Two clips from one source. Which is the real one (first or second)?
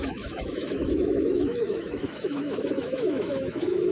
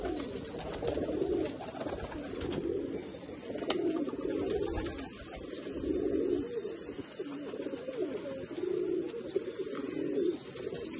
second